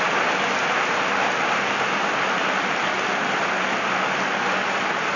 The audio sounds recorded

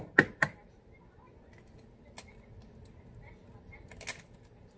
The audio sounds recorded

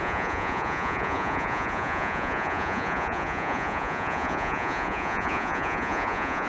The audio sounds remade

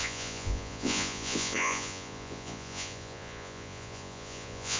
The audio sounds remade